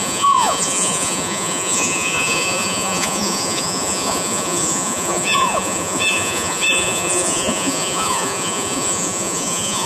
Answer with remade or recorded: remade